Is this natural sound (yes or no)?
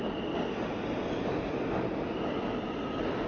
yes